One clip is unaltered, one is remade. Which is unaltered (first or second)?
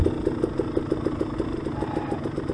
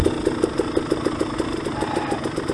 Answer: first